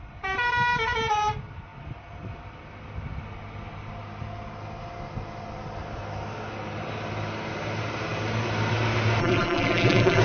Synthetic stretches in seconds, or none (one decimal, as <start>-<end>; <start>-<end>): 9.2-10.2